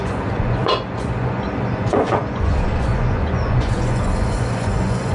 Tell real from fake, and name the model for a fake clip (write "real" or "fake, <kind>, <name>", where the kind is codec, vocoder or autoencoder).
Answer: fake, vocoder, Vocos